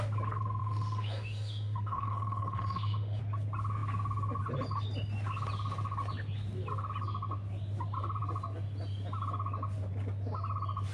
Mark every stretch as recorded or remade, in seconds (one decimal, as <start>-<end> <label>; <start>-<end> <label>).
0.0-0.6 recorded; 0.6-3.2 remade; 3.2-10.9 recorded